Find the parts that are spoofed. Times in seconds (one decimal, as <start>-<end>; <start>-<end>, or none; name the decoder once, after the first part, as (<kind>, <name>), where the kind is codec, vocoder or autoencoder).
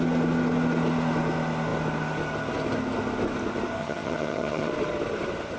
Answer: 3.8-4.7 (vocoder, HiFi-GAN)